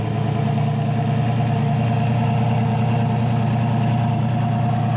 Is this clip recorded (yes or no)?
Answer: yes